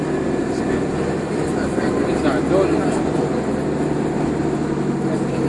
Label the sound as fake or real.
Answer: real